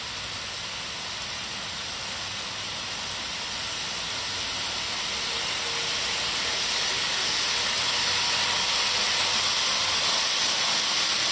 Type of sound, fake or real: real